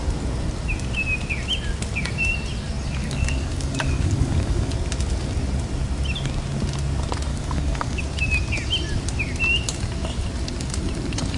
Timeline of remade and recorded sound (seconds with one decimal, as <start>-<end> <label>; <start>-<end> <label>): 0.0-3.0 recorded; 3.0-4.7 remade; 4.7-7.3 recorded; 7.3-8.0 remade; 8.0-11.4 recorded